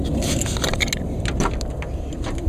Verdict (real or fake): real